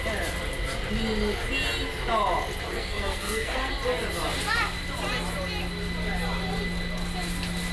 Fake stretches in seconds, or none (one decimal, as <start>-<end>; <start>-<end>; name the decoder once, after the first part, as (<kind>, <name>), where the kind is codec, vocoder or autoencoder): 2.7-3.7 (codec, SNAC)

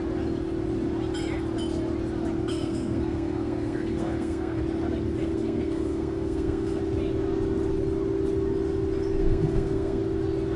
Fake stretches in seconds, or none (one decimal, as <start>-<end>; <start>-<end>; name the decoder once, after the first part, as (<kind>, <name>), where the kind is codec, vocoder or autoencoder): 2.5-4.6 (codec, SNAC); 5.2-6.8; 9.2-10.0

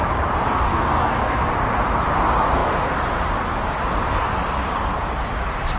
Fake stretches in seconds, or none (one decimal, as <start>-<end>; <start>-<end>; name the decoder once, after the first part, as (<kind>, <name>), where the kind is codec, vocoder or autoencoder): 0.5-1.4 (codec, SNAC)

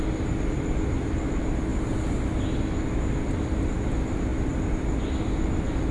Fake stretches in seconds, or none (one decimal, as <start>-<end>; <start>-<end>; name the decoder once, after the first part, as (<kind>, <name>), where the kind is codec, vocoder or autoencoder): none

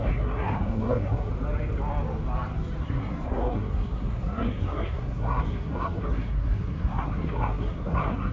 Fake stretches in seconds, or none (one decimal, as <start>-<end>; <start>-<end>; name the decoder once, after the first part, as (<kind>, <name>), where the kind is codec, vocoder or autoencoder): 0.0-1.3 (codec, SNAC); 2.8-8.3

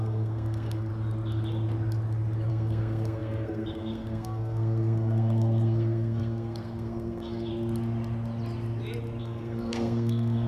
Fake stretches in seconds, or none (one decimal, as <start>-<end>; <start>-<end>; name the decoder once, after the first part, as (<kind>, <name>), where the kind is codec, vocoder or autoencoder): 0.0-0.9 (codec, SNAC); 2.5-7.5; 9.2-10.5